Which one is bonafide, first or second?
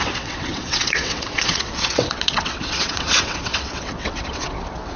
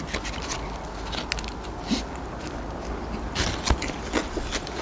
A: second